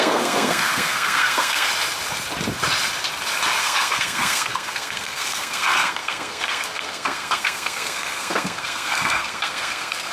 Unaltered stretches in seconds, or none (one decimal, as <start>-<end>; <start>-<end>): 1.7-3.6